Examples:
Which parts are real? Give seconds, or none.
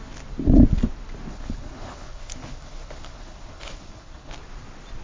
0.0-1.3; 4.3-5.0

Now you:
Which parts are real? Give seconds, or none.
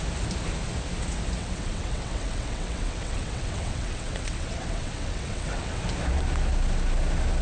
0.0-1.4; 5.8-7.4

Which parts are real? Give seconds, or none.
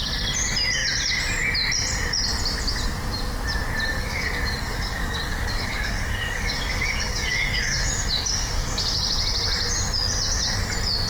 0.0-3.9; 9.1-11.1